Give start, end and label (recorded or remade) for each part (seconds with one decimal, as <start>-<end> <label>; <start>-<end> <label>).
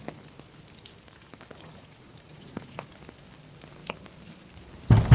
0.0-1.5 recorded; 1.5-2.9 remade; 2.9-5.1 recorded